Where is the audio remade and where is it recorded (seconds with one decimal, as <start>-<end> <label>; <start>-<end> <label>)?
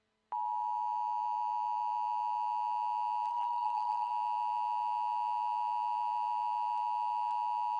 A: 0.0-3.3 recorded; 3.3-4.1 remade; 4.1-7.8 recorded